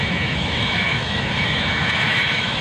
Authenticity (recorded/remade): remade